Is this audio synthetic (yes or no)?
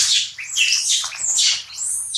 no